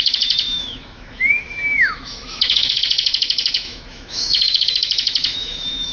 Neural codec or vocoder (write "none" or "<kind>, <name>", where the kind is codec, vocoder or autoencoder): autoencoder, DAC-VAE